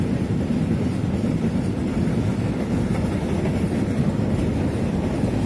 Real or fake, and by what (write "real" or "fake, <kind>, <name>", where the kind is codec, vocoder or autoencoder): real